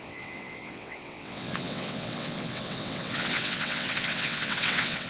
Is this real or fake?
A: fake